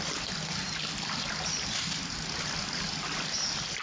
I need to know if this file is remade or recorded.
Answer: recorded